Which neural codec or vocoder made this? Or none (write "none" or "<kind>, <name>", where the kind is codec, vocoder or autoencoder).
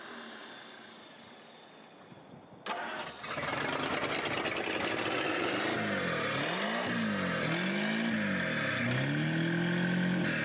none